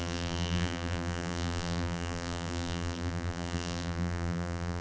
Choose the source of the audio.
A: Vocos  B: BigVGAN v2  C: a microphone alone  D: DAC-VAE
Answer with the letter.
B